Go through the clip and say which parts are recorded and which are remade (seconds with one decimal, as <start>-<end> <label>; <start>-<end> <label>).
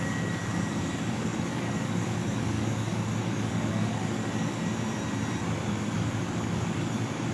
0.0-4.7 remade; 4.7-5.7 recorded; 5.7-7.3 remade